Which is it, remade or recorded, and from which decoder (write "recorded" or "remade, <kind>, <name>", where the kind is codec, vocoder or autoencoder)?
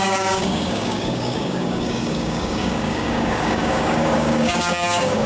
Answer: remade, codec, DAC